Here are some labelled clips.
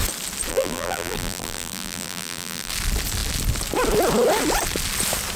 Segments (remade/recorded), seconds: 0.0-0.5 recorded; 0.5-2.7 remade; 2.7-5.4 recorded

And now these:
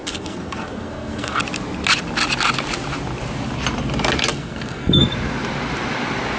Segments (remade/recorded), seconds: 0.0-1.4 remade; 1.4-4.3 recorded; 4.3-5.0 remade; 5.0-6.4 recorded

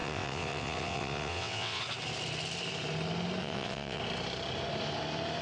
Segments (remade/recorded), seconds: 0.0-1.8 remade; 1.8-3.4 recorded; 3.4-4.0 remade; 4.0-5.4 recorded